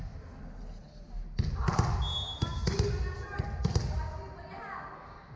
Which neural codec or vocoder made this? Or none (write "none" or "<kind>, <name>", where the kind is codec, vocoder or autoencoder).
none